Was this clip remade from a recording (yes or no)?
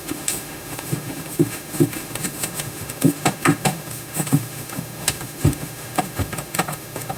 yes